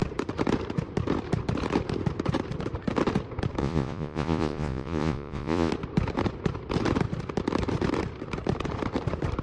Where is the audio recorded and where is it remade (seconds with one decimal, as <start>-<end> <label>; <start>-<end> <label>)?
0.0-3.6 recorded; 3.6-5.7 remade; 5.7-9.4 recorded